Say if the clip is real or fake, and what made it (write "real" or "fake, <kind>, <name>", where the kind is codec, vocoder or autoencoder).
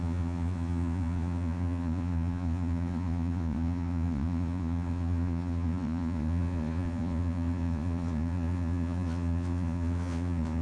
fake, vocoder, Vocos